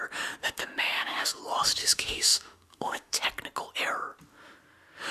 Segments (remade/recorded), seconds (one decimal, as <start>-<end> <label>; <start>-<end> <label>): 0.0-0.4 recorded; 0.4-1.4 remade; 1.4-1.8 recorded; 1.8-3.2 remade; 3.2-5.1 recorded